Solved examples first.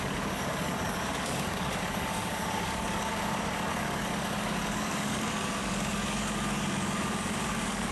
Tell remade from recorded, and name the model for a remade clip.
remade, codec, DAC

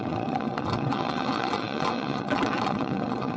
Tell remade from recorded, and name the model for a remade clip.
remade, vocoder, WaveNeXt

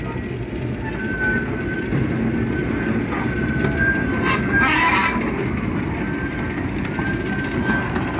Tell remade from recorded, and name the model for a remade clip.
recorded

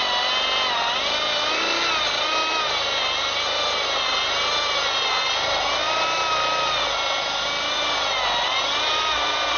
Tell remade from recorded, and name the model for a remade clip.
recorded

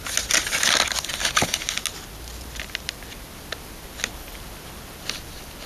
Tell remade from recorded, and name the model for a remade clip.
recorded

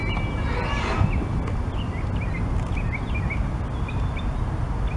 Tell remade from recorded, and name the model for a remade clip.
recorded